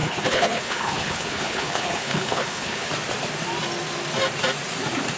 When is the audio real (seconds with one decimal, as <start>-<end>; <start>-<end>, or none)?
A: 2.9-5.2